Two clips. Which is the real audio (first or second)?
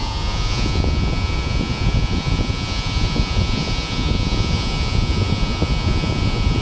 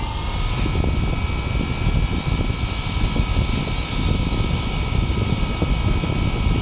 second